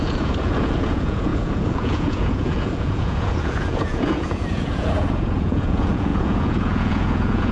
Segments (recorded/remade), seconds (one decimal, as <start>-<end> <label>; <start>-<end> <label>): 0.0-7.5 remade